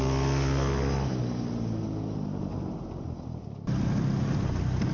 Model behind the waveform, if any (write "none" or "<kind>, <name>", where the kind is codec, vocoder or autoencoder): none